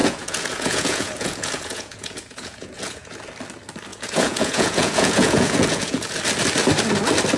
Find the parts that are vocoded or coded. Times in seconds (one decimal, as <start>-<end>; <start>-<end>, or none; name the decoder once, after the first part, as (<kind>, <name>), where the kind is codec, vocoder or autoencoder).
0.0-3.2 (vocoder, Vocos); 3.9-6.2